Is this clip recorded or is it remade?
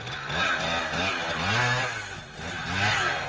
recorded